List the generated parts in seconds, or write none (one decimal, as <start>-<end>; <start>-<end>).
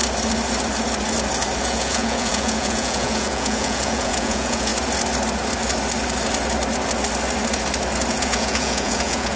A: 1.6-4.7; 8.1-9.4